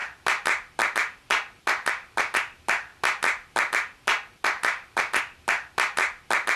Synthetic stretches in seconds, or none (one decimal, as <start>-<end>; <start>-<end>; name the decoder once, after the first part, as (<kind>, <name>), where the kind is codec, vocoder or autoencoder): none